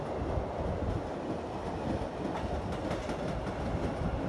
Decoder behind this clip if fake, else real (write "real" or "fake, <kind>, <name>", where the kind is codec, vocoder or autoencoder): real